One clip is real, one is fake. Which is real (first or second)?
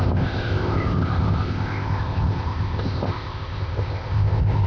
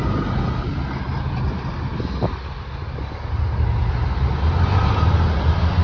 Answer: second